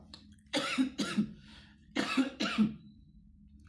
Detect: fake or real fake